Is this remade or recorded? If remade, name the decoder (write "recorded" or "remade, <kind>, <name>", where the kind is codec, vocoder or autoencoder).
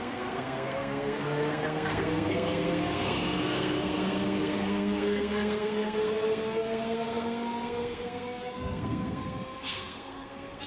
remade, codec, SNAC